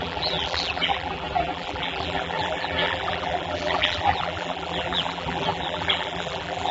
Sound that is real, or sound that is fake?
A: fake